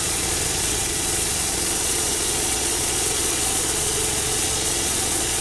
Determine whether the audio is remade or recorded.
remade